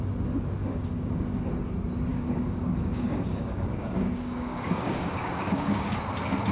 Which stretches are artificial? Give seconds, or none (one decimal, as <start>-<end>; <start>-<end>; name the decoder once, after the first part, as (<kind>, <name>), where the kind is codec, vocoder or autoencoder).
0.6-1.4 (codec, DAC); 2.1-6.0